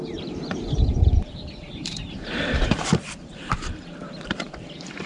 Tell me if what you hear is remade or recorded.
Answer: remade